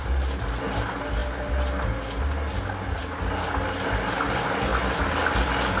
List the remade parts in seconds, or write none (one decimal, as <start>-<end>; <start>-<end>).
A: none